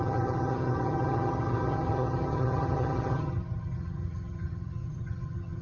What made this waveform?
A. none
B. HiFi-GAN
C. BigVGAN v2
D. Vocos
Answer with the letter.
B